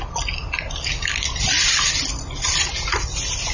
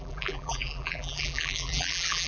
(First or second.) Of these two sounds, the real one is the first